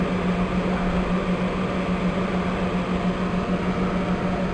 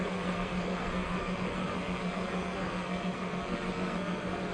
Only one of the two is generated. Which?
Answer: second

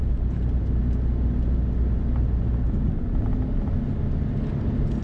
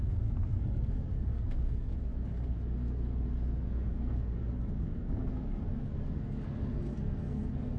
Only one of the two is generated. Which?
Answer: second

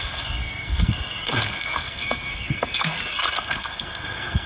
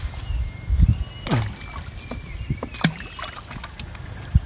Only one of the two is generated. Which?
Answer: first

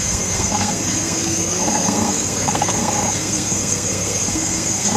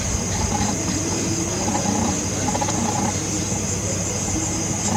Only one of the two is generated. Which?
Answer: first